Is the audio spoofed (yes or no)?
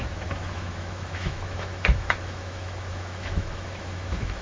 yes